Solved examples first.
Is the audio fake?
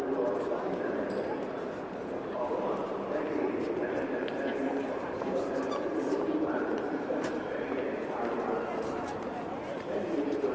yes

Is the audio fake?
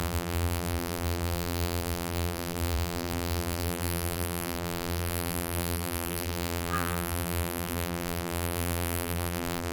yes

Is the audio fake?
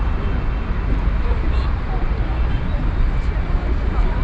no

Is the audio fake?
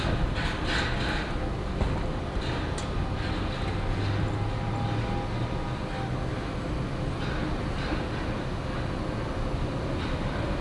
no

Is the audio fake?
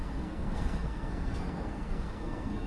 yes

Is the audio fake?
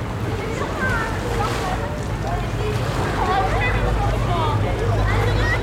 no